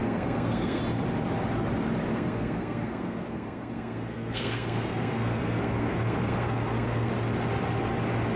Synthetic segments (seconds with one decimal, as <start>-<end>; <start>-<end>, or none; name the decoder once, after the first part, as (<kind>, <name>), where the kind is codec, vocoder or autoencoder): 0.0-0.8 (codec, SNAC); 2.1-7.1